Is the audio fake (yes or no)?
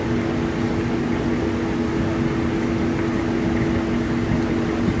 no